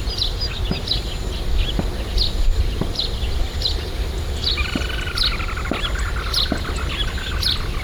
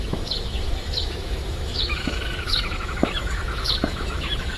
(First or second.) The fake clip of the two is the second